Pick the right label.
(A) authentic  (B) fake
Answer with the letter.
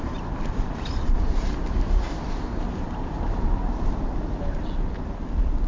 B